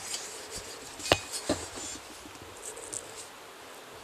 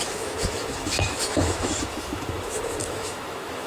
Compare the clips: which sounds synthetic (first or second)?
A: second